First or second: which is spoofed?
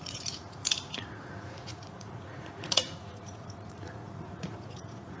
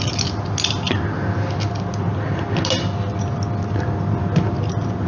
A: first